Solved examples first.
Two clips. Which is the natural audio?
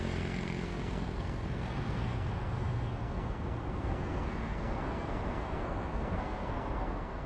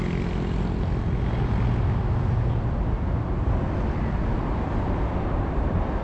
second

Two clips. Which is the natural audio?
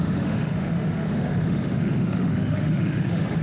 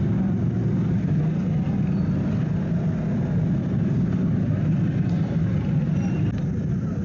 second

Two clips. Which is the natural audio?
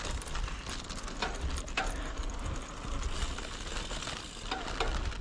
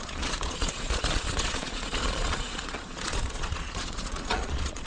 first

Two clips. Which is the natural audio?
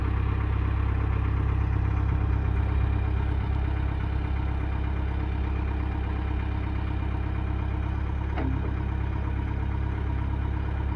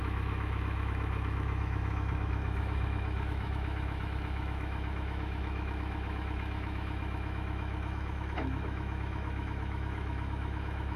first